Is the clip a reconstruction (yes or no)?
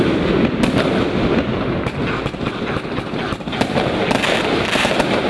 no